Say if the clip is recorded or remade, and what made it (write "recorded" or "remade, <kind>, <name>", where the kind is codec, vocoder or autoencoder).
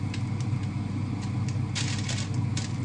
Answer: recorded